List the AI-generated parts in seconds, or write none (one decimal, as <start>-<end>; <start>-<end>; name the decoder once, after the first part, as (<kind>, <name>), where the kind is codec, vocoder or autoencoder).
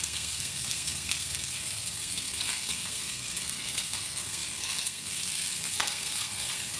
0.0-6.8 (codec, SNAC)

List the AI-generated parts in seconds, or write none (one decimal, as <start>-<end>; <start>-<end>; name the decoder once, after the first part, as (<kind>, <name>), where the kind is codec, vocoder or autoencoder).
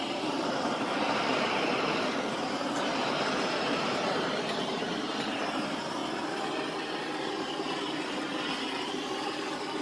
0.0-6.0 (vocoder, BigVGAN v2); 8.8-9.8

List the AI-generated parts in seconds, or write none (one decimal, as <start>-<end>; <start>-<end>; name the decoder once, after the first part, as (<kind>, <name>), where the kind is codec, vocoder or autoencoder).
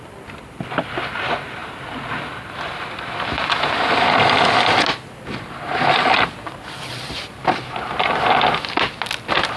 none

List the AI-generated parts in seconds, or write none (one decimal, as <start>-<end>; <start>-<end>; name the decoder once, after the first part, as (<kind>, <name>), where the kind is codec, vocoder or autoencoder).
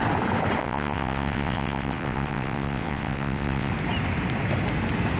0.6-3.7 (vocoder, WaveNeXt)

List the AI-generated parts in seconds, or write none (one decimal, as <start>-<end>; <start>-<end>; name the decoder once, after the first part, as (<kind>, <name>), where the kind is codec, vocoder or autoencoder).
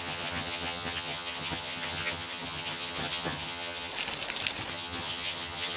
0.0-3.9 (vocoder, HiFi-GAN); 4.7-5.8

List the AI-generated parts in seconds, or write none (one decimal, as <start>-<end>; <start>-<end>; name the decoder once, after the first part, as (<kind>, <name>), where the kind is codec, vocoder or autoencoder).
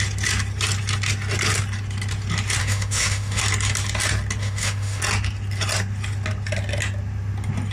2.6-3.4 (autoencoder, DAC-VAE); 4.4-5.0